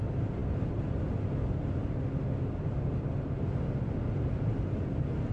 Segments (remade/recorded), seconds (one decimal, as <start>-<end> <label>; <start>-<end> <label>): 0.0-5.3 recorded